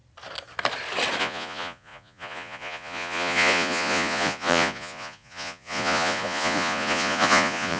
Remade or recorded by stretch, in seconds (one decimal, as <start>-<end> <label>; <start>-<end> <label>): 0.0-1.2 recorded; 1.2-7.8 remade

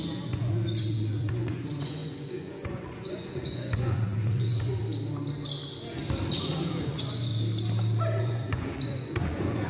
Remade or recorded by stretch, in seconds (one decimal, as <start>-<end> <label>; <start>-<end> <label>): 0.0-4.8 remade; 4.8-6.4 recorded; 6.4-7.3 remade; 7.3-8.2 recorded; 8.2-9.7 remade

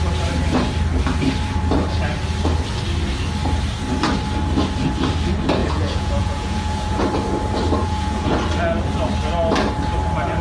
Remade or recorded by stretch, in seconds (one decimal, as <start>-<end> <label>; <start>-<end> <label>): 0.0-5.6 recorded; 5.6-7.0 remade; 7.0-7.8 recorded; 7.8-8.4 remade; 8.4-10.4 recorded